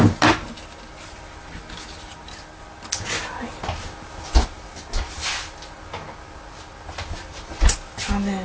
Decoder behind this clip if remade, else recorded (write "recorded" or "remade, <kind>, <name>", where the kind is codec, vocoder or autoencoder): recorded